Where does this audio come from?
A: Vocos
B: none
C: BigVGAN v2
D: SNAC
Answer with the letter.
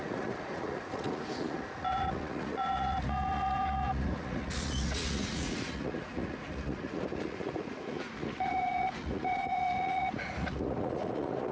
A